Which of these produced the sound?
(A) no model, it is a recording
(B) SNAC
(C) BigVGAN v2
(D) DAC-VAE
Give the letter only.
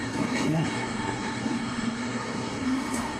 B